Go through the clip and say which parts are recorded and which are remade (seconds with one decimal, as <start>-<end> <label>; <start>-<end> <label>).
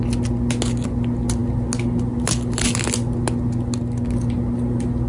0.0-5.1 recorded